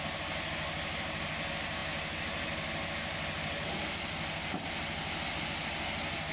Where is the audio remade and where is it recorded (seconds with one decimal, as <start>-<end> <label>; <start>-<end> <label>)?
0.0-6.3 recorded